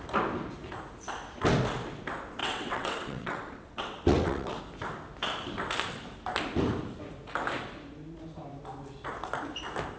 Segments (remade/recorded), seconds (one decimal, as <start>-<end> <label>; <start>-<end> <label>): 0.0-2.4 recorded; 2.4-4.6 remade; 4.6-10.0 recorded